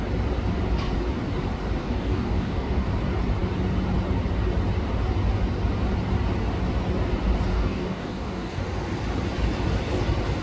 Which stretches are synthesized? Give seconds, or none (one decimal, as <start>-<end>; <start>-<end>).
1.8-2.9; 7.5-8.5